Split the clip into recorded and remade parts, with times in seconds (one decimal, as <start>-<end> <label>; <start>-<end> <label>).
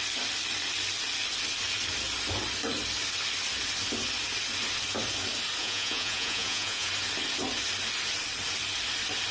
0.0-5.6 recorded; 5.6-6.9 remade; 6.9-9.3 recorded